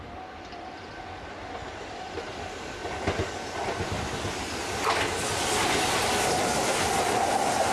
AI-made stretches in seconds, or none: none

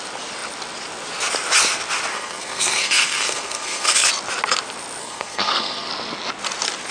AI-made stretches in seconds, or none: 2.1-4.1; 5.0-5.9

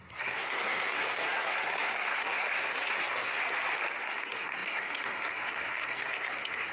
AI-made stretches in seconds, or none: 0.0-3.4; 4.0-6.7

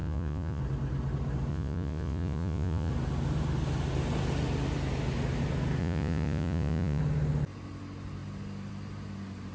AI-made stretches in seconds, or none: 0.0-0.6; 1.5-2.9; 5.8-7.0